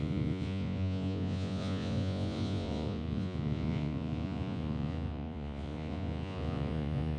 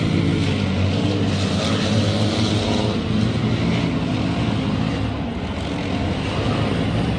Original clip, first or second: second